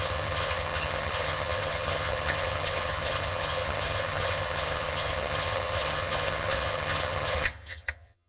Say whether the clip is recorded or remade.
remade